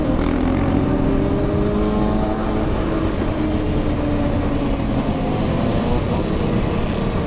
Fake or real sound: real